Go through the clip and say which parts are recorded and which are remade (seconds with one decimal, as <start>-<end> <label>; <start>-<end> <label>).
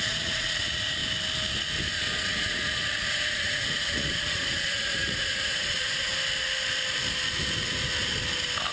0.0-1.0 remade; 1.0-2.2 recorded; 2.2-6.1 remade; 6.1-8.7 recorded